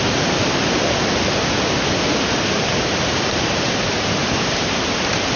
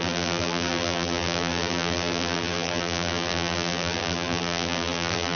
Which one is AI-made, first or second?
second